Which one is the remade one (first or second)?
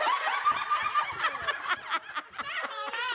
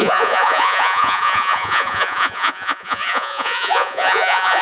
second